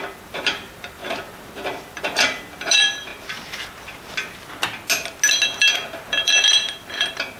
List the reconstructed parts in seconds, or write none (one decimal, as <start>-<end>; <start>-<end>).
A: 0.0-3.1; 5.7-7.4

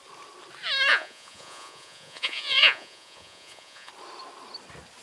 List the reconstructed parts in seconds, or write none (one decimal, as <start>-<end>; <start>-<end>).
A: 0.9-3.9

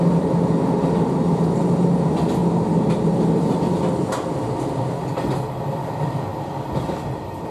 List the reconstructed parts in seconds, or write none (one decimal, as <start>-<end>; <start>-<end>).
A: none

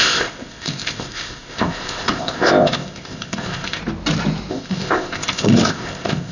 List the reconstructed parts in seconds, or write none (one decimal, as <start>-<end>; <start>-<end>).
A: 0.0-3.8; 4.5-6.3

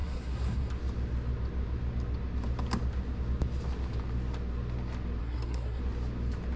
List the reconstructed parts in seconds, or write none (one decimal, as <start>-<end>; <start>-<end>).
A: 0.0-0.7; 5.2-5.8

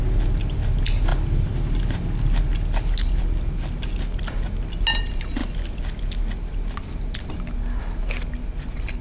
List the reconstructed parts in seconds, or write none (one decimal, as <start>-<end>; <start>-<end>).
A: none

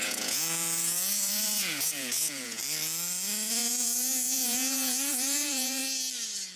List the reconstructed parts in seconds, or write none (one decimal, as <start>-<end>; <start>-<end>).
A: 0.0-2.6; 3.5-5.8